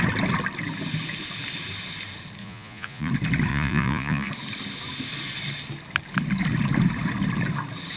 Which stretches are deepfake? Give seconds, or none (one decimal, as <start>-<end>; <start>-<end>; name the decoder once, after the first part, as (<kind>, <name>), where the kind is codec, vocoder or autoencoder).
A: 2.4-3.1 (vocoder, Vocos); 3.5-4.3